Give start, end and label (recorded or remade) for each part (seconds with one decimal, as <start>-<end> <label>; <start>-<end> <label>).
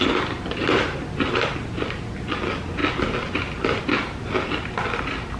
0.0-5.4 recorded